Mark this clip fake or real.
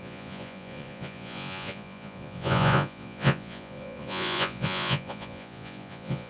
fake